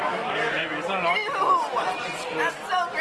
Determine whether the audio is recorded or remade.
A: recorded